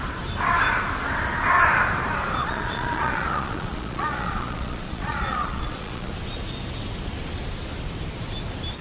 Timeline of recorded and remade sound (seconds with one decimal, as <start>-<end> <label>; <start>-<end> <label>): 0.0-2.4 recorded; 2.4-6.1 remade; 6.1-8.8 recorded